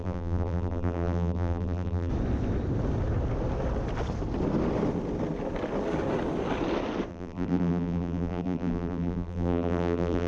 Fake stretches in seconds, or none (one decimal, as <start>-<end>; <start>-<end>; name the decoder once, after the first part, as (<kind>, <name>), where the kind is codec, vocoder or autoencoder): 0.0-2.1 (vocoder, BigVGAN v2); 7.1-10.3